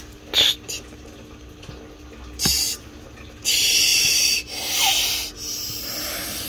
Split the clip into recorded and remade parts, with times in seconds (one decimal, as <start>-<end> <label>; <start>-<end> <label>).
0.0-6.5 recorded